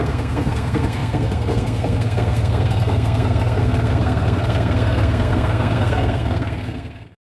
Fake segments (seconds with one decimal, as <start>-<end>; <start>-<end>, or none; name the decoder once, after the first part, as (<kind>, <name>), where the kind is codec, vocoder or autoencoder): 0.0-7.3 (codec, SNAC)